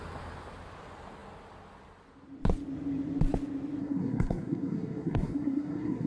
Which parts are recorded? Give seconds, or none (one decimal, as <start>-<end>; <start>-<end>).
0.0-3.8